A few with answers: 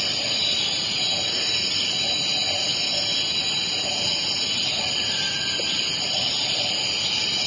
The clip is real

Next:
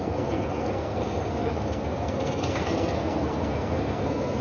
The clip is fake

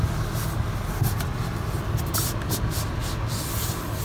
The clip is real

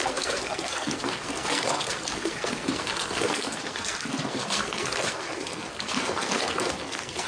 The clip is fake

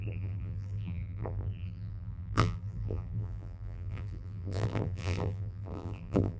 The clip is fake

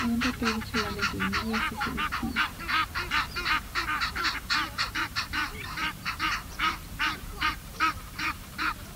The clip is fake